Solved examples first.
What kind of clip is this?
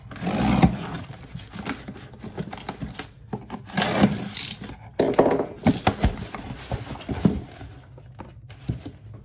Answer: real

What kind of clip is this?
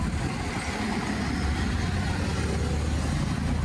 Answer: real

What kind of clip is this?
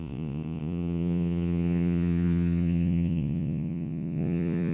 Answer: fake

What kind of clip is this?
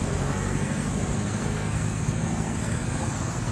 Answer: fake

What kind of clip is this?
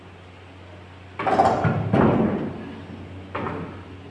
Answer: real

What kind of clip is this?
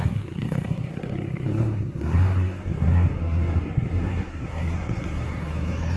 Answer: fake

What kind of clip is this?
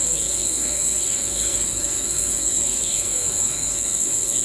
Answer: fake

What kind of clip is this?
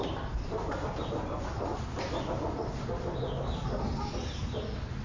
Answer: real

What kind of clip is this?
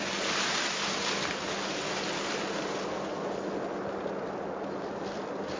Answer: real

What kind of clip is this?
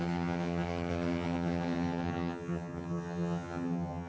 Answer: fake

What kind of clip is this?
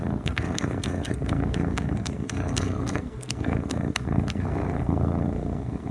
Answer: fake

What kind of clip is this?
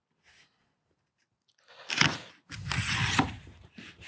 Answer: real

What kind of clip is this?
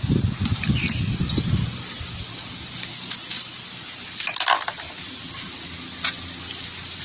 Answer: real